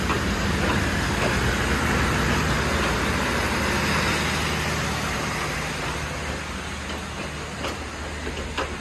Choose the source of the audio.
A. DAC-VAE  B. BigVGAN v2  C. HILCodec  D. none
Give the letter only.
D